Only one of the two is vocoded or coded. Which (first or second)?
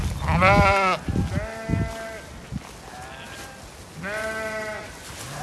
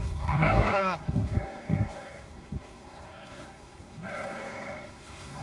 second